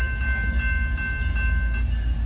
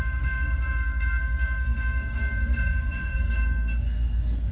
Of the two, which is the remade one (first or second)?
second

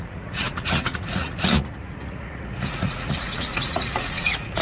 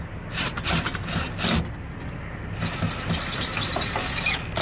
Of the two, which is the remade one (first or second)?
first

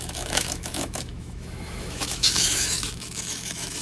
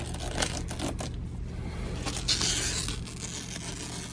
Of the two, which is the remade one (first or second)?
first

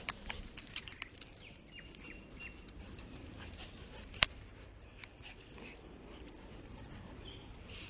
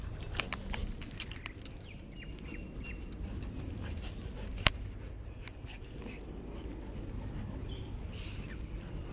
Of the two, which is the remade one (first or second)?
first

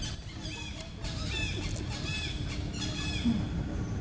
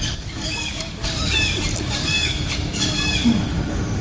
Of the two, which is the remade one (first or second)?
second